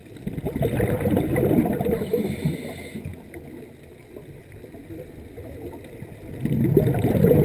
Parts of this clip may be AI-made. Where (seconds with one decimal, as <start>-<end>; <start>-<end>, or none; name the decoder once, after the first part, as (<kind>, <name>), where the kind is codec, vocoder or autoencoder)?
none